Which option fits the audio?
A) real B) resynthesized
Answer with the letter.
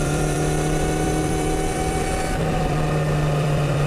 B